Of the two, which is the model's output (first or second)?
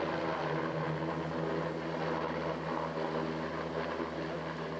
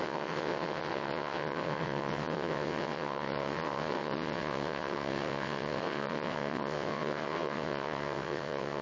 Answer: second